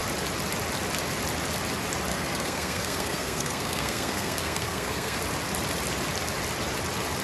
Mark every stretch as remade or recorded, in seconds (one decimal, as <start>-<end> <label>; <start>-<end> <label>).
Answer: 0.0-2.1 recorded; 2.1-5.2 remade; 5.2-7.2 recorded

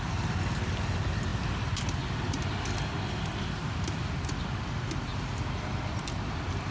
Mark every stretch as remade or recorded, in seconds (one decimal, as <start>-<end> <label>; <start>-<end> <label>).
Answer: 0.0-6.7 recorded

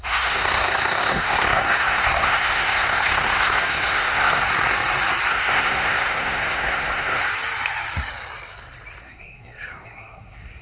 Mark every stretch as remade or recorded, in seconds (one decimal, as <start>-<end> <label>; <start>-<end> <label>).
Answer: 0.0-4.5 remade; 4.5-5.3 recorded; 5.3-7.3 remade; 7.3-9.0 recorded; 9.0-10.6 remade

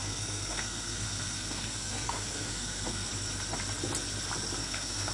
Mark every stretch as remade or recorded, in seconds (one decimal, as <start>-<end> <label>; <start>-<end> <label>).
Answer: 0.0-3.1 remade; 3.1-4.6 recorded; 4.6-5.1 remade

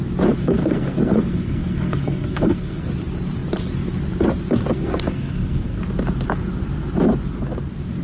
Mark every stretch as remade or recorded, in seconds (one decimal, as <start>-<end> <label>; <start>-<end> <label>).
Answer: 0.0-0.4 recorded; 0.4-2.9 remade; 2.9-4.7 recorded; 4.7-5.8 remade; 5.8-8.0 recorded

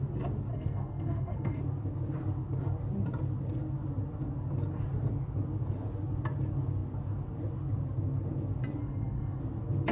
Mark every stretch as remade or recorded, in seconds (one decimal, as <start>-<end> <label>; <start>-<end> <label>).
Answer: 0.0-0.5 recorded; 0.5-1.6 remade; 1.6-8.8 recorded; 8.8-9.4 remade; 9.4-9.9 recorded

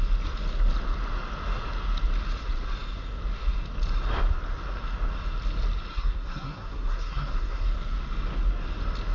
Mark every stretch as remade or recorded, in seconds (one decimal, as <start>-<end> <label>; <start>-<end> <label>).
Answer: 0.0-5.9 recorded; 5.9-7.7 remade; 7.7-9.1 recorded

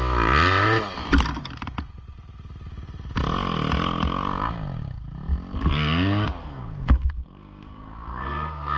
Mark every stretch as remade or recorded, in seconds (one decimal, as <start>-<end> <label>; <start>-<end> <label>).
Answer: 0.0-6.4 recorded; 6.4-8.8 remade